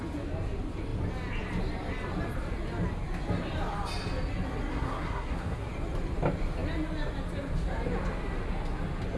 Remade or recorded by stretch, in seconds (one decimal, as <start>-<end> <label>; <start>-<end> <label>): 0.0-4.7 recorded; 4.7-5.7 remade; 5.7-9.2 recorded